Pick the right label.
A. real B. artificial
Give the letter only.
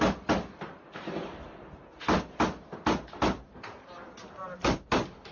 A